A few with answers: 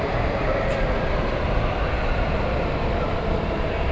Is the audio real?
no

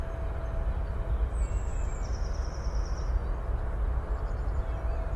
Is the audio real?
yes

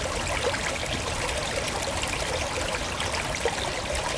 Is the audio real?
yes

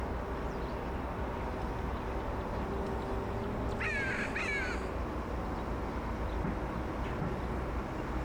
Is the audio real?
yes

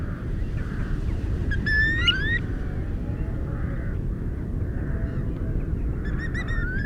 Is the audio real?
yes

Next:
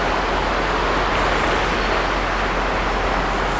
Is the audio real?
yes